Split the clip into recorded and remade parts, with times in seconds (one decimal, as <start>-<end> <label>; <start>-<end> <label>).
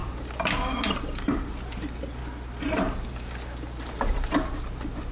0.0-0.9 recorded; 0.9-2.2 remade; 2.2-3.8 recorded; 3.8-5.1 remade